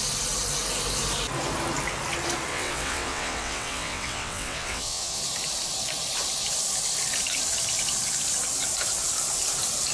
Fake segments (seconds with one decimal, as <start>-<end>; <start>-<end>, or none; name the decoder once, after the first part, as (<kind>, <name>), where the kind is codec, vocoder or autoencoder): 2.5-5.2 (vocoder, WaveNeXt)